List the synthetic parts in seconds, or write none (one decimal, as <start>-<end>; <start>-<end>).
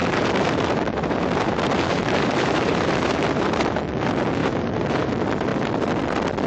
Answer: 0.0-3.9; 4.4-5.1